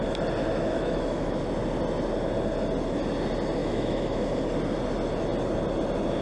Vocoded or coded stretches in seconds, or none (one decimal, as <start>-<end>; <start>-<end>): 0.4-1.4; 3.6-4.2